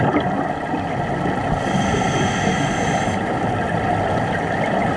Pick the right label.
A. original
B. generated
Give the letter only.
A